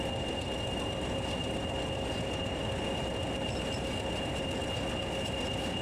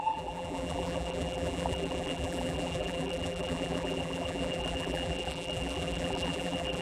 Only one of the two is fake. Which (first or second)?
second